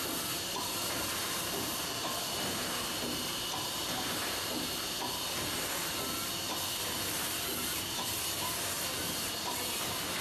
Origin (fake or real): real